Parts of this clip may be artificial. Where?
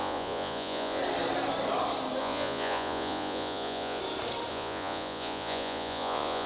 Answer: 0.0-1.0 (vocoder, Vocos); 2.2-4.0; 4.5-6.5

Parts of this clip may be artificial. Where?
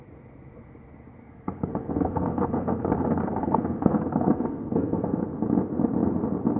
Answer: 1.2-5.2 (codec, SNAC)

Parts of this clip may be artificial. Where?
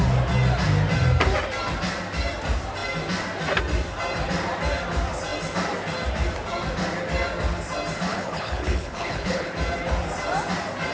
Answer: 8.1-9.5 (codec, HILCodec)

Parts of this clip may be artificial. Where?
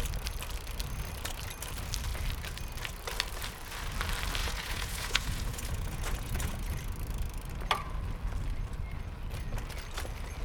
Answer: 4.4-6.8 (vocoder, Vocos)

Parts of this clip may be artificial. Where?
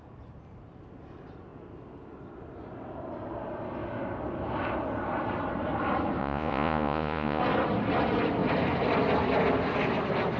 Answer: 6.2-7.4 (vocoder, Vocos)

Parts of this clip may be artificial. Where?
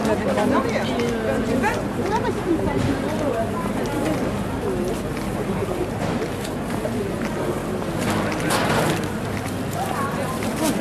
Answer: 1.7-3.7 (vocoder, BigVGAN v2)